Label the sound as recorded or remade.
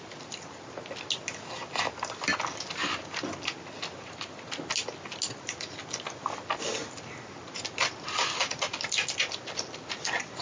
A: recorded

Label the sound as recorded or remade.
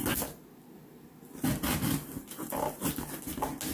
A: recorded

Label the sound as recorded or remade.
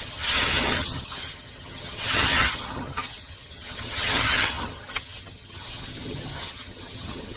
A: remade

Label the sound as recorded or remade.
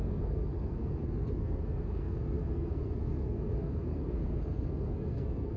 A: remade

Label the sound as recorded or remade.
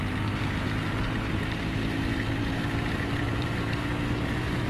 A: remade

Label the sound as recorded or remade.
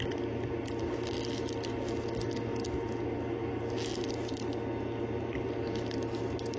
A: recorded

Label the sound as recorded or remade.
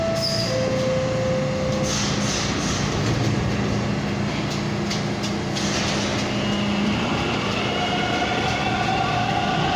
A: recorded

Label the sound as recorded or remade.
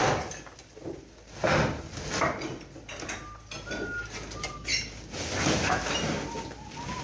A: recorded